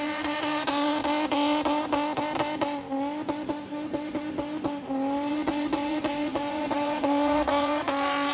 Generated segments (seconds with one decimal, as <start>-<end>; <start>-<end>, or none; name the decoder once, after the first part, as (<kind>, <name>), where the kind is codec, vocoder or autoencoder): 0.0-1.0 (vocoder, Vocos); 5.3-8.3